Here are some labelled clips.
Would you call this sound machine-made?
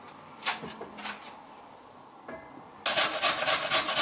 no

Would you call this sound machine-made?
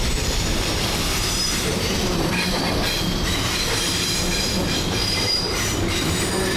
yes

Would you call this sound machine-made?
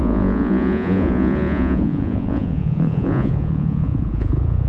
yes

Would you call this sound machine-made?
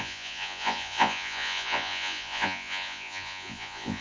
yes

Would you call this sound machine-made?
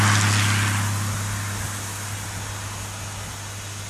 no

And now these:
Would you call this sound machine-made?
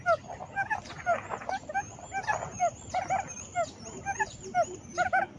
no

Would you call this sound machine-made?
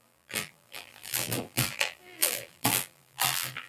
yes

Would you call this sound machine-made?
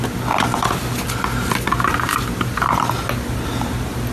no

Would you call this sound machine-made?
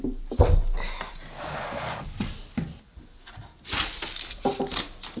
no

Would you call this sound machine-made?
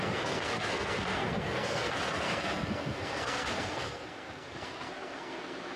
yes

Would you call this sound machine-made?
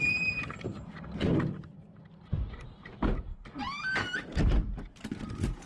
yes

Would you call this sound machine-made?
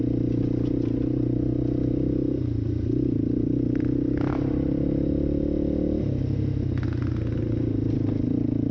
no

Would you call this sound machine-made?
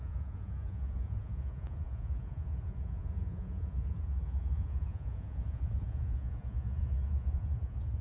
yes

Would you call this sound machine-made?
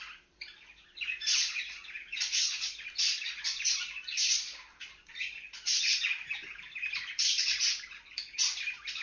yes